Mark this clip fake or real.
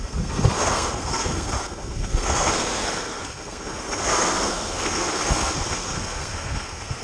fake